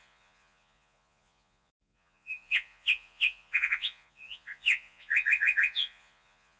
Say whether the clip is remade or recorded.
remade